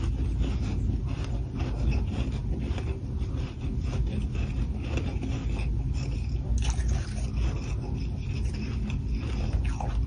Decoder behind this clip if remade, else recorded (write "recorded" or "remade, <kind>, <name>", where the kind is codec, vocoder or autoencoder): recorded